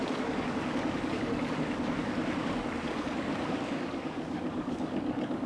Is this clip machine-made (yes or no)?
yes